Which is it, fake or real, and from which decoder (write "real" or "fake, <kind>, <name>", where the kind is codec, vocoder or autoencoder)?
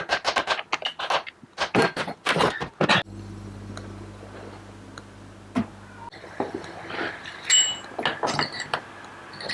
real